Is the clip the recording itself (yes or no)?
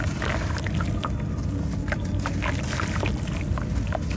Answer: yes